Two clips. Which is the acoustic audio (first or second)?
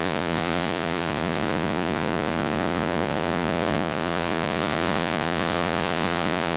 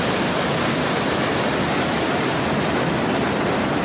second